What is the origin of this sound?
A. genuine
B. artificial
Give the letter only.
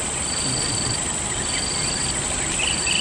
A